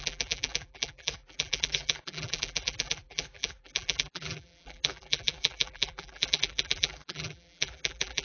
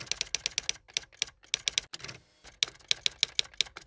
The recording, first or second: second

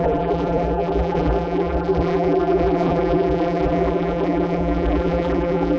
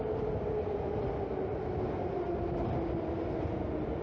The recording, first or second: second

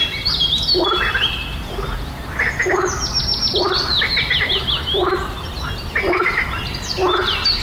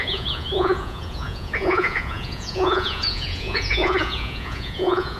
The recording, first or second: first